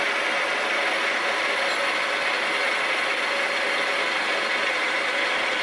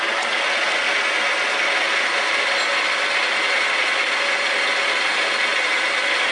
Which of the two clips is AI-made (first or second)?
first